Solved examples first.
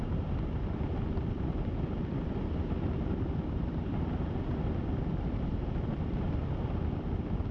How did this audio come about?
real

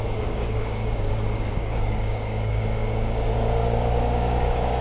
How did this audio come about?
fake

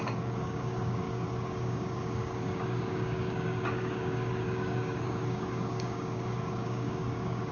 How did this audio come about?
fake